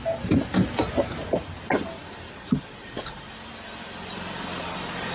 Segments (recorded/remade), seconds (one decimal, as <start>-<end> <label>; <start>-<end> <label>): 0.0-5.1 recorded